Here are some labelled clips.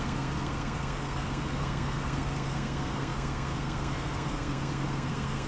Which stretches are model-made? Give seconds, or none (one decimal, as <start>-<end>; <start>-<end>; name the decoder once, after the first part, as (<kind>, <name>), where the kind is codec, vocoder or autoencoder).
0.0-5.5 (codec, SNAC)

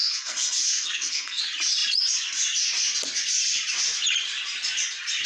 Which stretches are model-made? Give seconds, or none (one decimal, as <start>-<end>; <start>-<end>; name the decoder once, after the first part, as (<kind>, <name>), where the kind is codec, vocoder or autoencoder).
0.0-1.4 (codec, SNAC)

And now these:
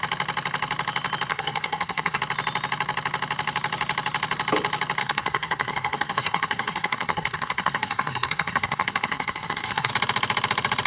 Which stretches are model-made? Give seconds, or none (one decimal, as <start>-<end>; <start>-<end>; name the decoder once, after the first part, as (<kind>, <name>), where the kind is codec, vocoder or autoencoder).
1.3-2.2 (codec, SNAC); 5.0-9.9

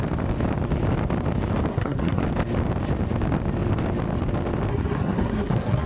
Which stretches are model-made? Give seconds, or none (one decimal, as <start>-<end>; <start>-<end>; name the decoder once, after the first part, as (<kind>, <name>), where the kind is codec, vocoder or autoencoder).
1.7-2.2 (codec, SNAC); 4.7-5.9

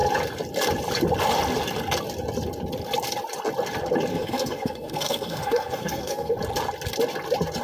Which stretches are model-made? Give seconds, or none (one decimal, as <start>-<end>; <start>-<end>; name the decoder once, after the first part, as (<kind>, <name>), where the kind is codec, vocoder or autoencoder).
4.1-6.3 (codec, SNAC)

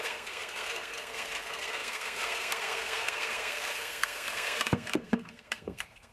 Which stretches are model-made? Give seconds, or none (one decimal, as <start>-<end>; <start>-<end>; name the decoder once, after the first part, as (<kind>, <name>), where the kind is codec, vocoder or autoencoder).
0.0-6.1 (codec, SNAC)

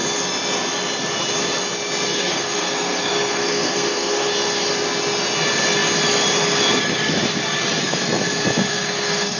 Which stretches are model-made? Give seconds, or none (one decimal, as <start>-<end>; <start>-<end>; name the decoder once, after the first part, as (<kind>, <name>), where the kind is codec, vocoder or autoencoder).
2.1-4.3 (codec, SNAC); 8.7-9.4